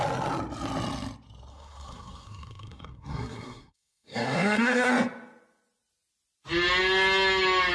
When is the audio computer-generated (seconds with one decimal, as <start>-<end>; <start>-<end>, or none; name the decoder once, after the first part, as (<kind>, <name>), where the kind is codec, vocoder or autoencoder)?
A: 1.5-4.9 (codec, SNAC)